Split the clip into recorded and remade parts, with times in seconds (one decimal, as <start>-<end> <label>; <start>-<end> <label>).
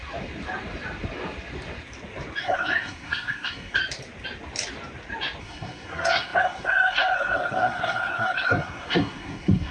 0.0-2.4 recorded; 2.4-3.8 remade; 3.8-5.4 recorded; 5.4-9.7 remade